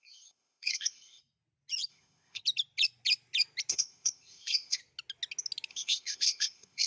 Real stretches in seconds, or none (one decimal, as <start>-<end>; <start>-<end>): 1.2-1.9; 2.4-3.7; 4.8-5.7